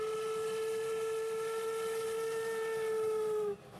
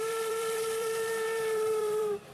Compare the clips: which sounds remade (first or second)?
second